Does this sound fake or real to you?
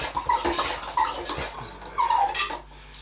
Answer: real